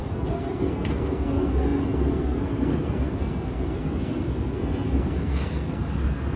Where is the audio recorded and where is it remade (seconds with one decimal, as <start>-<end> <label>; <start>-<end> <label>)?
0.0-6.4 remade